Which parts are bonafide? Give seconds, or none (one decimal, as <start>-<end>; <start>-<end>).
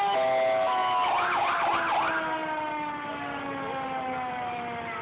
0.0-5.0